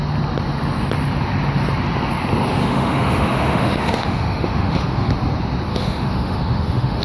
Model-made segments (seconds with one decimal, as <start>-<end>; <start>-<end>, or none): 2.6-5.1; 5.7-7.0